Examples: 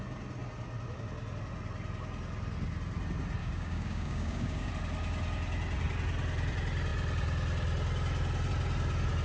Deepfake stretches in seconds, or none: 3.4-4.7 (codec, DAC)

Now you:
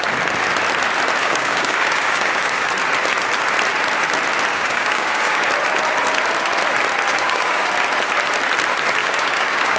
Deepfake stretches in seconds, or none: 1.2-2.7 (codec, DAC); 4.5-5.5; 7.1-7.7; 9.0-9.8

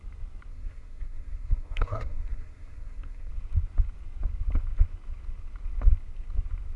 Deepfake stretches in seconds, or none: 0.5-3.3 (codec, SNAC)